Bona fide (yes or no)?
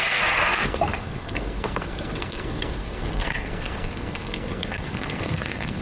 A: no